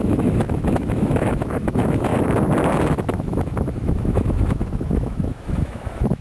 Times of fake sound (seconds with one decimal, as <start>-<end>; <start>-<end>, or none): 0.0-2.1; 2.8-6.2